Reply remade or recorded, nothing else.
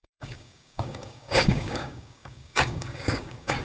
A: remade